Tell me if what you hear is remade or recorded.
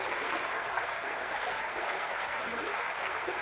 remade